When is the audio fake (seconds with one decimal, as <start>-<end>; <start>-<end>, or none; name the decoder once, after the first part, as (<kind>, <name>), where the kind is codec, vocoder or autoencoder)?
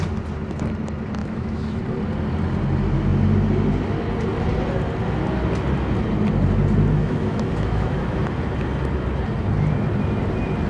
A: 1.2-1.8 (autoencoder, DAC-VAE); 7.0-8.2